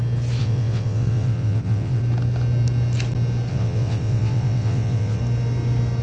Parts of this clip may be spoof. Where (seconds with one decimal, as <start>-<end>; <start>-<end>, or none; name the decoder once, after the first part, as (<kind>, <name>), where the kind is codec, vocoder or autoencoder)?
0.4-2.0 (vocoder, WaveNeXt); 3.5-5.2